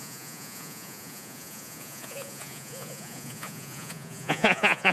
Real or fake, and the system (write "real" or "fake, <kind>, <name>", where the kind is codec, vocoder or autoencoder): fake, vocoder, Vocos